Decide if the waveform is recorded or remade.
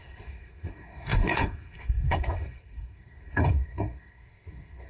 remade